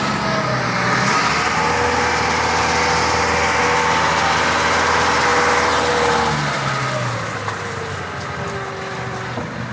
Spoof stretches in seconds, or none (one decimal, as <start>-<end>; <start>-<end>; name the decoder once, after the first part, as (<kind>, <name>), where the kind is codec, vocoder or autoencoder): none